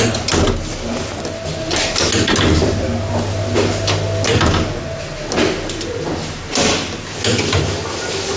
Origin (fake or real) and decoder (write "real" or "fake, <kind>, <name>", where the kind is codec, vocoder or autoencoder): real